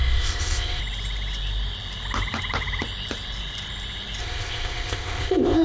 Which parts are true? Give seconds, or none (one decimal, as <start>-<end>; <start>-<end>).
0.8-4.2